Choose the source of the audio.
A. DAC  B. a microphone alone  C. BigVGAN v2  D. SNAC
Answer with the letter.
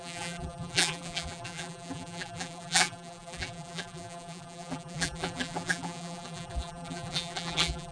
C